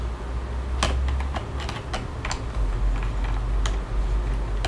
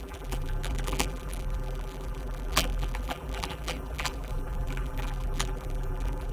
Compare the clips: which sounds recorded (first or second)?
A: first